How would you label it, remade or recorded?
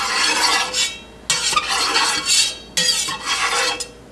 recorded